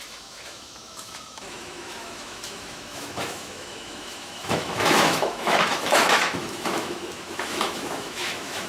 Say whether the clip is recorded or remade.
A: remade